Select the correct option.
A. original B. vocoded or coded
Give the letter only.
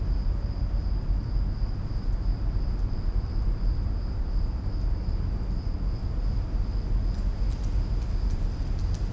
A